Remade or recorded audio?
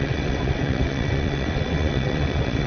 remade